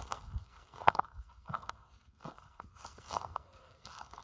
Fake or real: fake